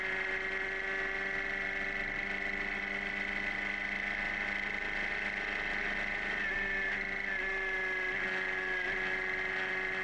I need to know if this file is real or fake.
real